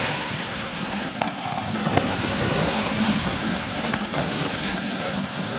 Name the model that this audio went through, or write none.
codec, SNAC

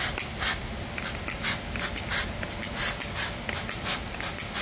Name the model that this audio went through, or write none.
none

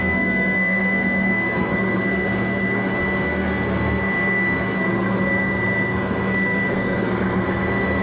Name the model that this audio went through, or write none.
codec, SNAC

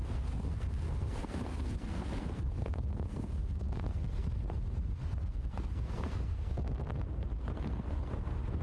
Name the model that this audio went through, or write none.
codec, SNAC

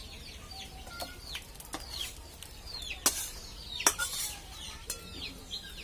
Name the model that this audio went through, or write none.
none